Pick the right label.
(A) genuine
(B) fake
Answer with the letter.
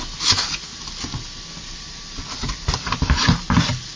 A